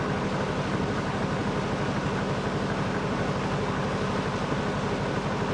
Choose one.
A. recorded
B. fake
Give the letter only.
A